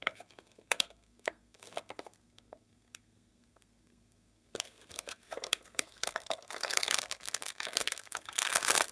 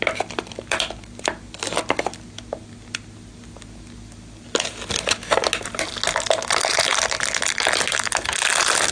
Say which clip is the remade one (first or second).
first